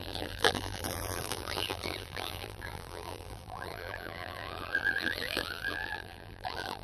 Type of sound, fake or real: fake